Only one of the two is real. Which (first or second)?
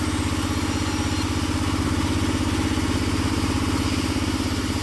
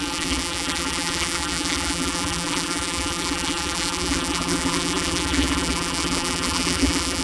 first